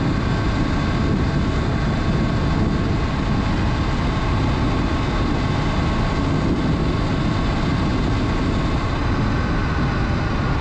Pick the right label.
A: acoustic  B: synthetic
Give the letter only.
A